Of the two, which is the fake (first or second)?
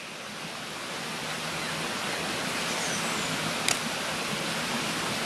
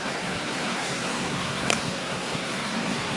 second